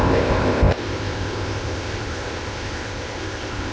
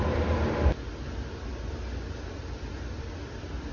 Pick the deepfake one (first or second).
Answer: first